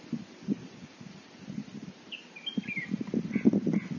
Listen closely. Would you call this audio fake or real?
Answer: real